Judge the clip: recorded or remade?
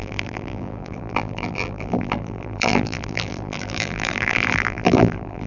remade